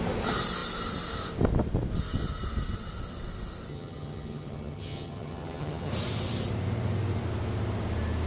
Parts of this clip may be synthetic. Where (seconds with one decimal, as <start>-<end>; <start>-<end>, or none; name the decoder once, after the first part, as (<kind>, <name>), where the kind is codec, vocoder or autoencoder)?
3.7-5.9 (vocoder, HiFi-GAN)

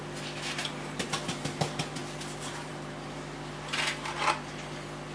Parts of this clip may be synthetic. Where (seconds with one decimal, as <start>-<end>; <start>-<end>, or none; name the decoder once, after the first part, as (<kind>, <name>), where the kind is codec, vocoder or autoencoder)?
none